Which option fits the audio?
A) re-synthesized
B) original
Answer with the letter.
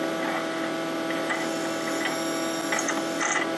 B